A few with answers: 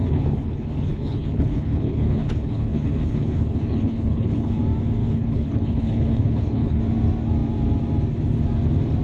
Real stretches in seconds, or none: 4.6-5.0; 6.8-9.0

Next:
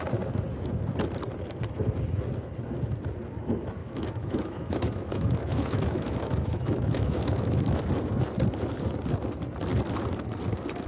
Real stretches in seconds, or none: 0.0-3.8; 7.8-10.9

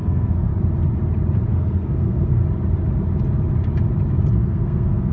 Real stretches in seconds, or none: 0.5-1.5; 2.4-4.3

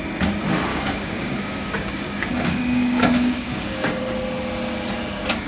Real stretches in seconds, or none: 0.0-0.7; 4.0-5.5

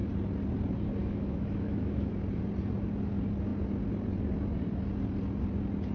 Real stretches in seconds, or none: 0.0-1.0; 2.1-5.9

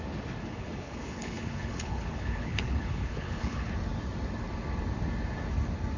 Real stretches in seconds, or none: 0.0-0.4; 3.7-6.0

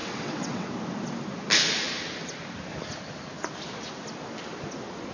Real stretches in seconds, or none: 0.7-5.1

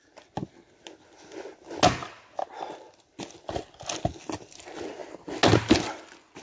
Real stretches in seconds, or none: 0.0-6.4